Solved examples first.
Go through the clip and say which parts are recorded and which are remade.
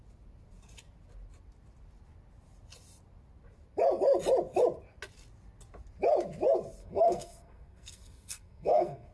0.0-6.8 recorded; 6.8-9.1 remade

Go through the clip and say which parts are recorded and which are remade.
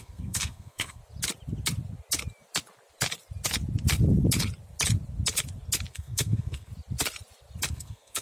0.0-1.0 remade; 1.0-5.9 recorded; 5.9-6.7 remade; 6.7-7.7 recorded; 7.7-8.2 remade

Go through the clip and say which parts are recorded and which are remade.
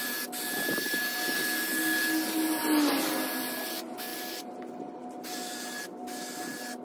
0.0-6.8 recorded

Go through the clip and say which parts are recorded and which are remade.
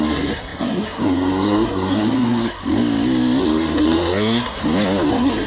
0.0-2.6 remade; 2.6-3.4 recorded; 3.4-4.6 remade; 4.6-5.1 recorded; 5.1-5.5 remade